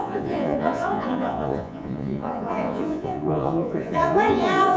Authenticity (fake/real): fake